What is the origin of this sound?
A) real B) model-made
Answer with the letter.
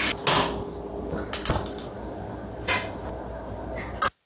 A